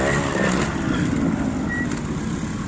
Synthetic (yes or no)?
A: no